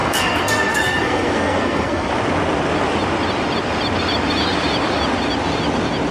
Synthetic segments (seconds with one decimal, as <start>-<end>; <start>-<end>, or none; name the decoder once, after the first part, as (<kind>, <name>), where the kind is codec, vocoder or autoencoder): 0.0-2.1 (codec, SNAC)